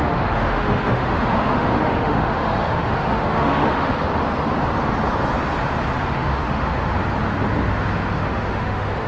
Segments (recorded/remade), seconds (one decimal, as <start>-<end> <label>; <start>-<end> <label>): 0.0-3.9 remade; 3.9-6.1 recorded; 6.1-6.9 remade; 6.9-8.1 recorded; 8.1-9.1 remade

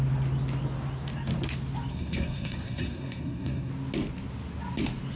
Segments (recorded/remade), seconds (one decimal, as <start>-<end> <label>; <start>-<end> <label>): 0.0-1.9 recorded; 1.9-3.7 remade; 3.7-5.2 recorded